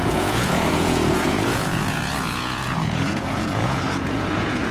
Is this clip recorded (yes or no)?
no